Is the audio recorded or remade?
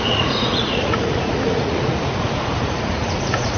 remade